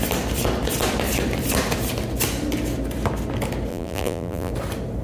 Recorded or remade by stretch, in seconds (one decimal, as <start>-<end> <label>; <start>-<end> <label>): 0.0-3.7 recorded; 3.7-4.5 remade; 4.5-5.0 recorded